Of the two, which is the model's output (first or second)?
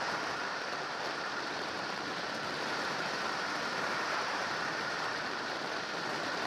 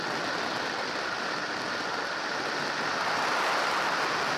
first